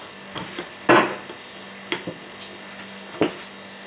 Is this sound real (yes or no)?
yes